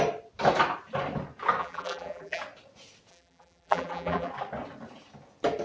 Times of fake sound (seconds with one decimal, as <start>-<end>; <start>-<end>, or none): 1.6-2.4; 3.1-4.3